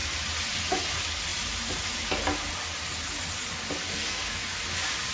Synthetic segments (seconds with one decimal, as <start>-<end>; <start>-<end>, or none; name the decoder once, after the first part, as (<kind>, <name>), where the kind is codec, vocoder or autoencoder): 3.8-4.3 (codec, SNAC)